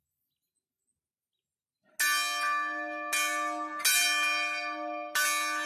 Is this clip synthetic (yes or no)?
no